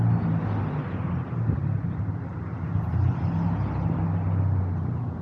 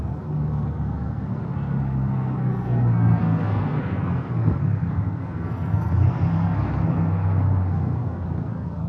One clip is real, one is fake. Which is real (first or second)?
first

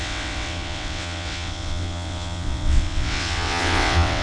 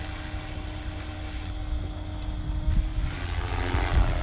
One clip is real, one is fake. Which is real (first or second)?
second